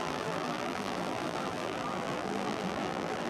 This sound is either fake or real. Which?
fake